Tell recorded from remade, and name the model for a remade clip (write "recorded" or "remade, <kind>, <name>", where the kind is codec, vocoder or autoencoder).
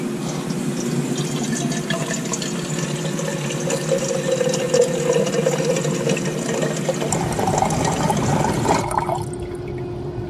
recorded